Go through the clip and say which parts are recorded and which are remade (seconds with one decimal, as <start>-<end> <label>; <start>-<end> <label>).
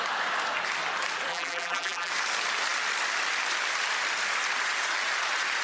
0.0-1.3 recorded; 1.3-2.1 remade; 2.1-5.6 recorded